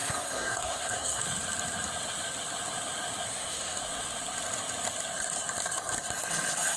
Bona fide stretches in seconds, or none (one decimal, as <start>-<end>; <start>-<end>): 1.2-3.3; 3.8-6.8